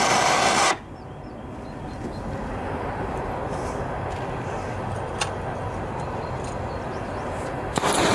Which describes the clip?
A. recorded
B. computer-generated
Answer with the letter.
A